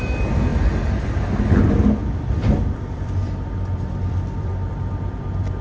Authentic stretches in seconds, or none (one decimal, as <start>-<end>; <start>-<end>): 0.0-0.5; 1.6-2.0